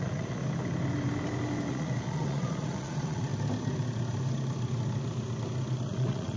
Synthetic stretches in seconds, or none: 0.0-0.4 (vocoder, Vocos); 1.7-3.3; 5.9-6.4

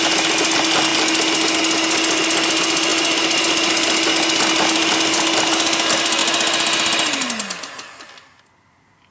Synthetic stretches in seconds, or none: none

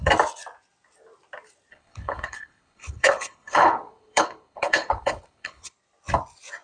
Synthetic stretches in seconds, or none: 1.7-5.7 (codec, HILCodec)

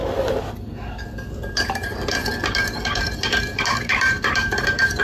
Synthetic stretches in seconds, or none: 1.5-5.0 (vocoder, BigVGAN v2)